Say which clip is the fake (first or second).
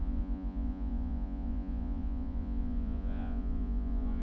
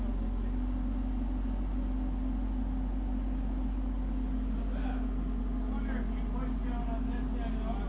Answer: first